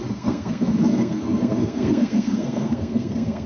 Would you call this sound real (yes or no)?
no